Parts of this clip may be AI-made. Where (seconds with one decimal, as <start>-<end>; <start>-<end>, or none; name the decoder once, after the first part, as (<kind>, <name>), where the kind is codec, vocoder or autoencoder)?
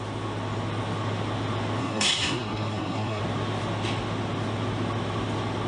1.8-3.2 (codec, SNAC)